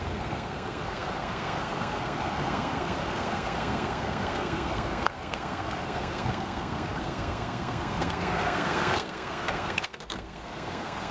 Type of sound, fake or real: fake